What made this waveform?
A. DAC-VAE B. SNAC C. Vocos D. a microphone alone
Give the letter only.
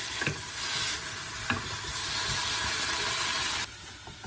D